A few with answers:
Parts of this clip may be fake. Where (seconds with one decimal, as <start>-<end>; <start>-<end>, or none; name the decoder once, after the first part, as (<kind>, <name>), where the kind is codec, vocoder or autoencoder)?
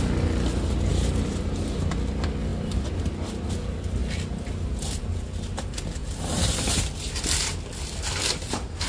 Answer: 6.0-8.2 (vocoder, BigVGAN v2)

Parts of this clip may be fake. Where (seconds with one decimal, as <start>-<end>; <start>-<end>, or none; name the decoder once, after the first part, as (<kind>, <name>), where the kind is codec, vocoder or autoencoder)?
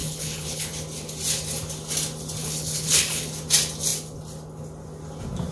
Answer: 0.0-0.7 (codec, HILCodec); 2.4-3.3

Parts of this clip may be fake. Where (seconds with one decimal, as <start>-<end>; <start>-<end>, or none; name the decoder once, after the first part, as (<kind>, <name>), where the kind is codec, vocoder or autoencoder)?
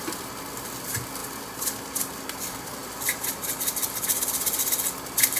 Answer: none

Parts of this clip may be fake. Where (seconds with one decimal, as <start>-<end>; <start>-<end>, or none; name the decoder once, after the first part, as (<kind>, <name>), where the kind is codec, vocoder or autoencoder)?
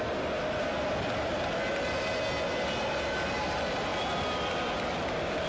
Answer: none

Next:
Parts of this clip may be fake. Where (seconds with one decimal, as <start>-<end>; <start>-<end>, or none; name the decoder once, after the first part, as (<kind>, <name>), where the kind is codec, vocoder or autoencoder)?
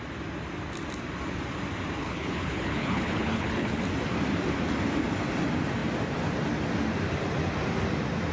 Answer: 2.0-3.8 (codec, HILCodec)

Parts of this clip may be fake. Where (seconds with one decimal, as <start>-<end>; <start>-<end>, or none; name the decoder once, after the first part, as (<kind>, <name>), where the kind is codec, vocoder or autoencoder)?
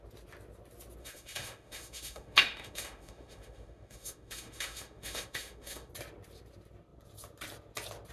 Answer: 1.0-5.9 (autoencoder, DAC-VAE)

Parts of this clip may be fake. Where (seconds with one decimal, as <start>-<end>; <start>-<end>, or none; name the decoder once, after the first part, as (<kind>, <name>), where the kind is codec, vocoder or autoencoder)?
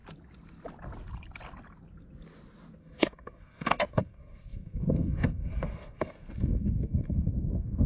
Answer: 2.8-7.9 (codec, SNAC)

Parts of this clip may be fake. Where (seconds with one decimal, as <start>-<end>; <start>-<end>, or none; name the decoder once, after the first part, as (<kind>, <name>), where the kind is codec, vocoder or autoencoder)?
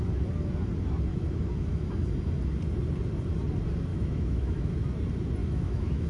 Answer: 1.1-1.9 (autoencoder, DAC-VAE); 3.9-4.7; 5.4-6.1